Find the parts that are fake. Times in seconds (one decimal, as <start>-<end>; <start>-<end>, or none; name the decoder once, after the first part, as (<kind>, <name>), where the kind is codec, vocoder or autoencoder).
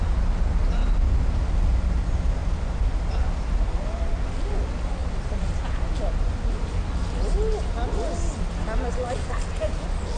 none